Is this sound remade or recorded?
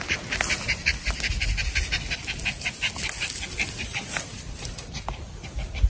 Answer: recorded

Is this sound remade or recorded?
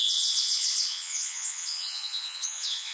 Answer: remade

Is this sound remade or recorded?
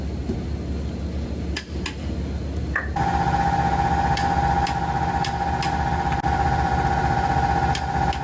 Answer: recorded